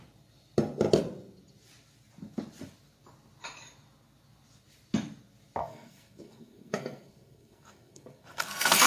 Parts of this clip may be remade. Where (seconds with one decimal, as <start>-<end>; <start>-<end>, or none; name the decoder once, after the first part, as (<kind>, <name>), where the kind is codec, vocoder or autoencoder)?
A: 5.6-8.9 (codec, SNAC)